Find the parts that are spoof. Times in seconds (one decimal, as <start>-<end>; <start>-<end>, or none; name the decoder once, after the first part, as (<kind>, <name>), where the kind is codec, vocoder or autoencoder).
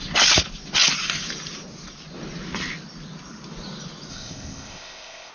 4.1-5.3 (codec, ZipCodec)